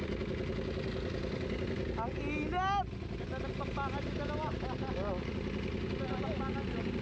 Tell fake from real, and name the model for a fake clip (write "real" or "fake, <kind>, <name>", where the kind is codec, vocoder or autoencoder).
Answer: real